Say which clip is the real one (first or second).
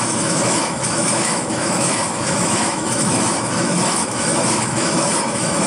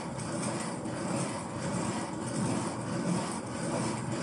second